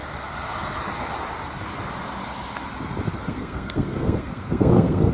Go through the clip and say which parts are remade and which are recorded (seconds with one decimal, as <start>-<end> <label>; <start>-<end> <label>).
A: 0.0-3.1 recorded; 3.1-5.1 remade